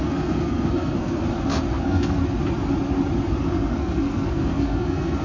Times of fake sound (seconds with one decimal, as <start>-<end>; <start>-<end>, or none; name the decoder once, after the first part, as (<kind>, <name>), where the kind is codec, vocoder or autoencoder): 0.0-1.2 (codec, SNAC); 1.8-2.2; 3.4-5.2